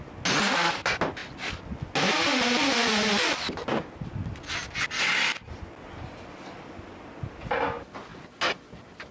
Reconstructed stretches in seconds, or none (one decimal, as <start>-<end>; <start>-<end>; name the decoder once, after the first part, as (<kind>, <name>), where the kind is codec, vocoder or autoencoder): none